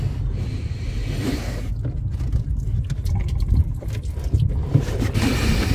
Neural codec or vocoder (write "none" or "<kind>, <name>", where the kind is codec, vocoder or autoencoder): none